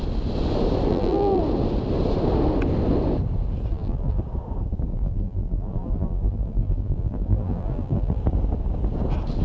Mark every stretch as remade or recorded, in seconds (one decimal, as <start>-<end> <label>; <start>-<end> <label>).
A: 0.0-0.9 recorded; 0.9-1.4 remade; 1.4-3.7 recorded; 3.7-4.2 remade; 4.2-4.9 recorded; 4.9-8.2 remade; 8.2-9.4 recorded